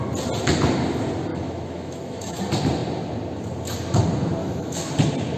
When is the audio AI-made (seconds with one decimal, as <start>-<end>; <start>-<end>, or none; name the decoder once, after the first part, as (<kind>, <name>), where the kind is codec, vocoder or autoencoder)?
1.3-2.4 (autoencoder, DAC-VAE); 4.4-4.9